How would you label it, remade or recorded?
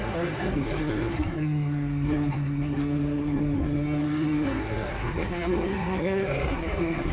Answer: remade